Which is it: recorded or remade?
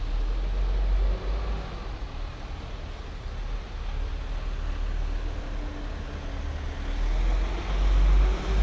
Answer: recorded